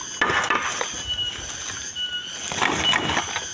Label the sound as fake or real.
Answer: real